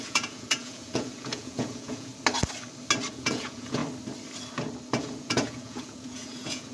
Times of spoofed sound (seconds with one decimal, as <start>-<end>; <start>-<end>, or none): 0.0-2.1; 3.1-3.8; 5.0-6.7